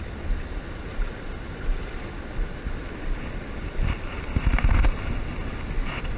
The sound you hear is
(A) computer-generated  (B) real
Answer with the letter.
B